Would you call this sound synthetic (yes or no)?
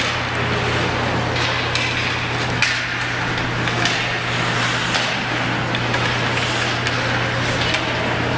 no